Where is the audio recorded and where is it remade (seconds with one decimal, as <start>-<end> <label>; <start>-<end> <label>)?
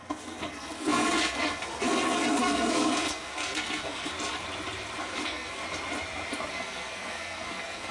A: 0.0-4.1 remade; 4.1-5.0 recorded; 5.0-5.6 remade; 5.6-6.5 recorded; 6.5-7.9 remade